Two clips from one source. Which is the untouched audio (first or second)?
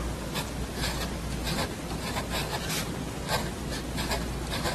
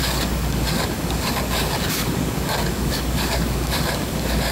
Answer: first